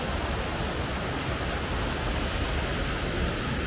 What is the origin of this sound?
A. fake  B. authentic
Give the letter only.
B